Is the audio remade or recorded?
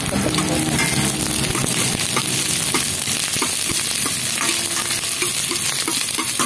recorded